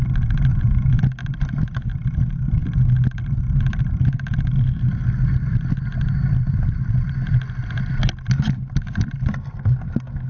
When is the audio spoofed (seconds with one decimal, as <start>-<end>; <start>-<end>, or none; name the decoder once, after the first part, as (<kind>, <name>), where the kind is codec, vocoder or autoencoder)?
0.5-1.0 (vocoder, Vocos)